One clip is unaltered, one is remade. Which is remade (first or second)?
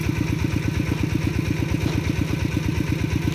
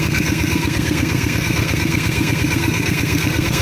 second